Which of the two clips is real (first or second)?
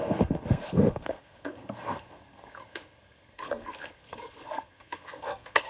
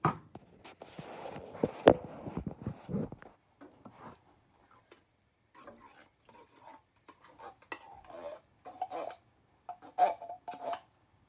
second